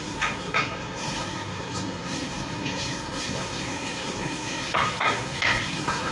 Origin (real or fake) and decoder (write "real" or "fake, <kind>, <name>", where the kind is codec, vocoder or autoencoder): fake, codec, SNAC